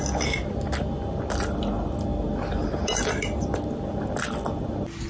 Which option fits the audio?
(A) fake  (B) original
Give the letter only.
B